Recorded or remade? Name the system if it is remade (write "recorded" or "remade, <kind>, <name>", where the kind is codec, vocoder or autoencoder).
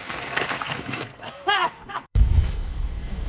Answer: remade, codec, SNAC